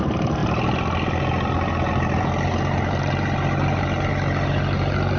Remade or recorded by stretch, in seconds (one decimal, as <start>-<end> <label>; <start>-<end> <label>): 0.0-5.2 recorded